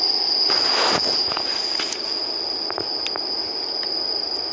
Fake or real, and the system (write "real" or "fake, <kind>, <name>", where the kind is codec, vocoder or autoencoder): real